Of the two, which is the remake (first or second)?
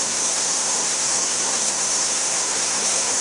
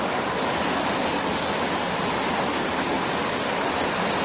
first